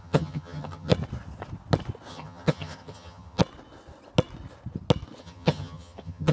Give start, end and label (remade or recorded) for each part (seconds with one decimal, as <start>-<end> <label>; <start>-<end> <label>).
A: 0.0-0.9 remade; 0.9-2.1 recorded; 2.1-3.4 remade; 3.4-5.2 recorded; 5.2-6.3 remade